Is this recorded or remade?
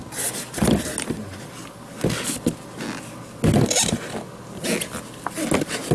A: recorded